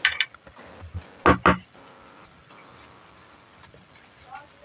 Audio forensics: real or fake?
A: real